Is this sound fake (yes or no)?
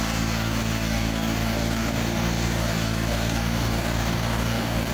yes